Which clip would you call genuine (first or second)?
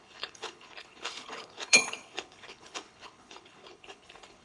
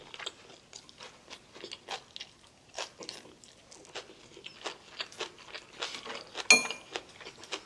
second